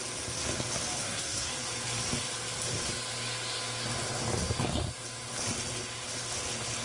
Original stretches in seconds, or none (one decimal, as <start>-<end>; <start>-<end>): 0.0-1.0; 1.5-6.8